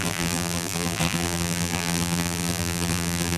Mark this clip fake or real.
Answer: fake